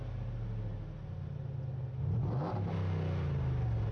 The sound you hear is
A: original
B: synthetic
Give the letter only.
A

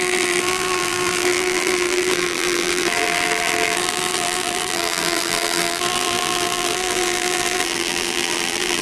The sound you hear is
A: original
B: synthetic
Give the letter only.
B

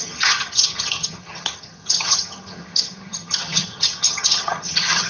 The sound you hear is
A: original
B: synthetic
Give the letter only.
B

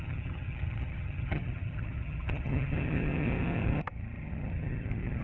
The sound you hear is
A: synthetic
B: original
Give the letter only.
A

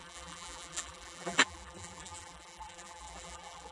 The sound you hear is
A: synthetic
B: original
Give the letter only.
A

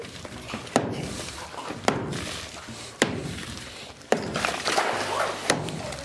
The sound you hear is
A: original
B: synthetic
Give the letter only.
B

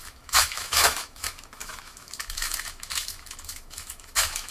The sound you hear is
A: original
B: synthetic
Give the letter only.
B